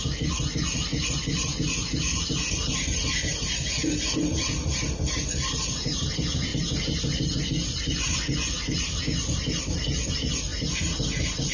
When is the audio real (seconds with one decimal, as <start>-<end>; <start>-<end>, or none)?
0.0-11.5